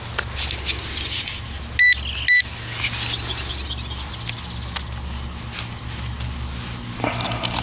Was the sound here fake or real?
real